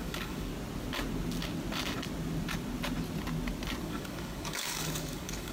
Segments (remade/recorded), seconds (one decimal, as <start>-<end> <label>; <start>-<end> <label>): 0.0-0.5 remade; 0.5-3.8 recorded; 3.8-5.5 remade